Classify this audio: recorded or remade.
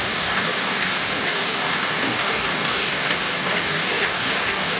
remade